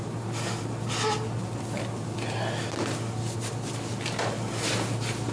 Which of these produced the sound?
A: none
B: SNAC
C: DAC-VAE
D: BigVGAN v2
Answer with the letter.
A